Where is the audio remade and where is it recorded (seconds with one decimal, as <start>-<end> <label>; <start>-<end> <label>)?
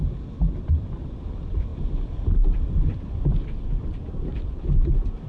0.0-5.3 remade